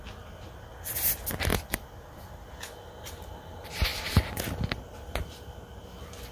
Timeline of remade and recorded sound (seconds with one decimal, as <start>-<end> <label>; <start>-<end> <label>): 0.0-1.5 recorded; 1.5-2.5 remade; 2.5-6.3 recorded